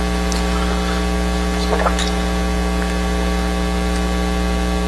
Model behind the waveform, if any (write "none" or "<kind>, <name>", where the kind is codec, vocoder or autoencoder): none